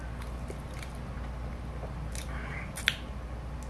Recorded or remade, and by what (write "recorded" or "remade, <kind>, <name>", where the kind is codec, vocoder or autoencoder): recorded